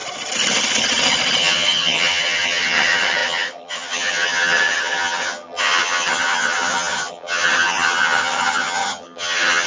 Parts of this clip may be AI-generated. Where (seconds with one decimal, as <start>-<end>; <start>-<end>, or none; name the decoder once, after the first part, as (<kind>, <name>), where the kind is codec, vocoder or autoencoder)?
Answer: 1.4-9.7 (vocoder, HiFi-GAN)